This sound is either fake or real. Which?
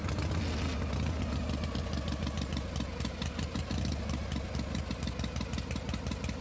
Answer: real